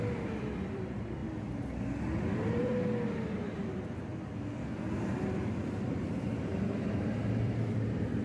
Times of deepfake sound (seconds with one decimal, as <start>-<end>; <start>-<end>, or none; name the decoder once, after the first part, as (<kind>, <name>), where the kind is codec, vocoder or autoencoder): 0.0-1.2 (vocoder, BigVGAN v2); 2.2-2.7; 3.4-4.1; 5.8-6.5; 7.4-8.2